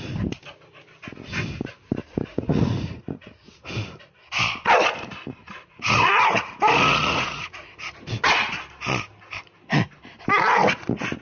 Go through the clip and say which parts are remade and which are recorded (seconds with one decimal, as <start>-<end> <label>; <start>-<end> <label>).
0.0-2.0 recorded; 2.0-3.6 remade; 3.6-5.4 recorded; 5.4-7.7 remade; 7.7-11.2 recorded